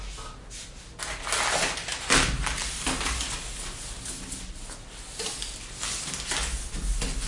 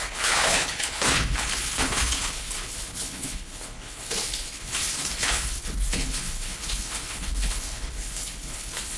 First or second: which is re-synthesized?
second